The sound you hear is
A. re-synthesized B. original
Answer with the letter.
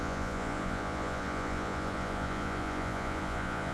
A